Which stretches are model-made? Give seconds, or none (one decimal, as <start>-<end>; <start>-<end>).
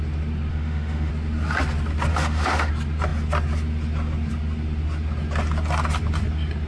0.5-1.1; 2.1-2.7